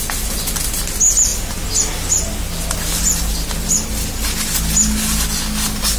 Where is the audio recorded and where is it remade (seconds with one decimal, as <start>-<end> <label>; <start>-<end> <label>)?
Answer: 0.0-6.0 recorded